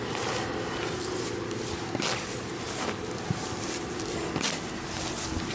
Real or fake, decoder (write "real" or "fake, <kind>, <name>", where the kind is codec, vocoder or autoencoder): real